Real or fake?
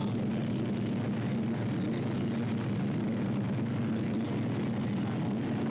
real